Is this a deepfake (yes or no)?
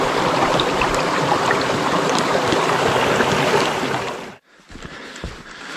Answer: no